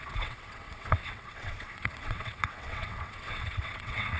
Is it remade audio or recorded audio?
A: remade